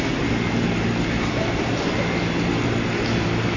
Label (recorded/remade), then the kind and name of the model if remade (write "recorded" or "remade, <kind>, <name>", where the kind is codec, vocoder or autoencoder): recorded